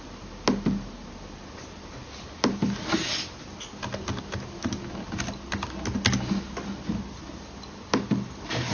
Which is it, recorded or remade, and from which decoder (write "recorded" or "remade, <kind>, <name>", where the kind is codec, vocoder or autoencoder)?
recorded